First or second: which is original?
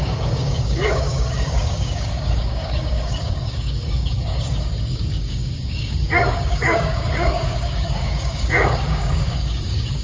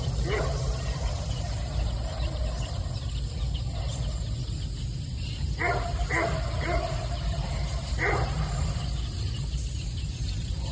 second